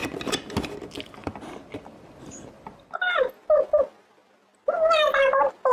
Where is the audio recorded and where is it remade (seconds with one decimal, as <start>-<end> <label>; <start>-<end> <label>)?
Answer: 0.0-1.2 recorded; 1.2-3.8 remade; 3.8-5.7 recorded